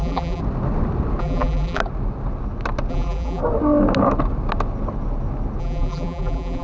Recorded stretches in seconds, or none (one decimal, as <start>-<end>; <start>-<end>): 0.4-1.2; 1.8-2.9; 3.4-5.6